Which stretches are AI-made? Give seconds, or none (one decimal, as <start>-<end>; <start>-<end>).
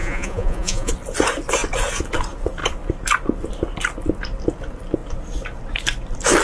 0.0-0.9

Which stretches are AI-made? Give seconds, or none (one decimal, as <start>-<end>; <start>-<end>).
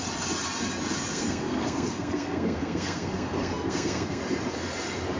1.1-4.2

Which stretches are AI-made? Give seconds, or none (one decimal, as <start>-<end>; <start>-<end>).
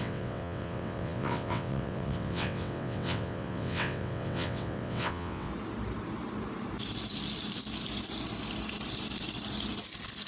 0.0-5.5